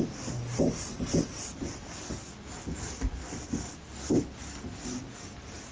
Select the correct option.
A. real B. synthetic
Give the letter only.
A